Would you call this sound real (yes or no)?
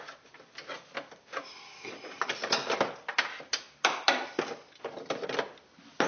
yes